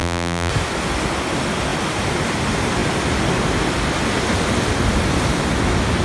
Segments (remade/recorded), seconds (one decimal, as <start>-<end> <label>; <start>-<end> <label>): 0.0-0.5 remade; 0.5-6.0 recorded